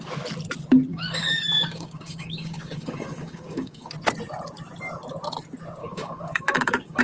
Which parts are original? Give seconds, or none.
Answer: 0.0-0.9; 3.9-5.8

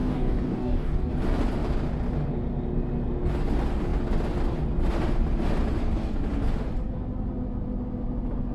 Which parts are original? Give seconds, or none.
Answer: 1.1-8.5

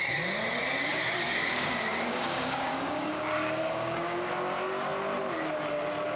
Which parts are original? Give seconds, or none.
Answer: 0.0-0.9; 4.3-6.2

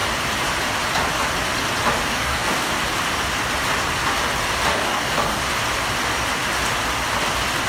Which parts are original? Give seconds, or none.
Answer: 0.0-2.1; 2.7-4.7; 5.4-7.7